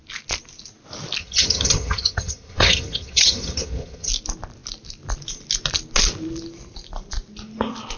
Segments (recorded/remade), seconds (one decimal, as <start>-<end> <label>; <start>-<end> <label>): 0.0-1.2 recorded; 1.2-4.1 remade; 4.1-8.0 recorded